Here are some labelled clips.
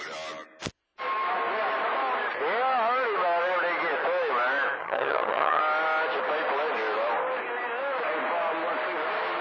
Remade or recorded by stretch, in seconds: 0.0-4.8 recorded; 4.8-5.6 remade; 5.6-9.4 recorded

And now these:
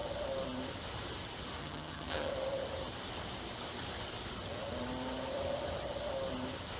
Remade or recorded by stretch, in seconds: 0.0-1.6 recorded; 1.6-2.3 remade; 2.3-6.8 recorded